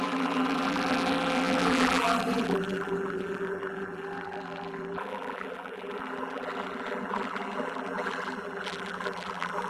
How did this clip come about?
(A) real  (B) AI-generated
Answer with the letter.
B